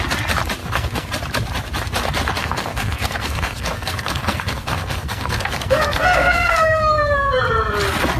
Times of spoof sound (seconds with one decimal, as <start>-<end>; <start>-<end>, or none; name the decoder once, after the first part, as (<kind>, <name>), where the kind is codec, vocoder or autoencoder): 0.6-1.1 (codec, SNAC); 2.4-7.3